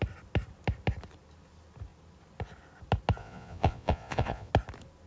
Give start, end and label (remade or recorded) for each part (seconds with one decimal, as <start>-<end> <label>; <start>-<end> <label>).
0.0-3.2 recorded; 3.2-4.5 remade; 4.5-5.1 recorded